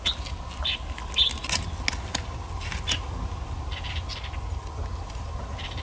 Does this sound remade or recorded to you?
recorded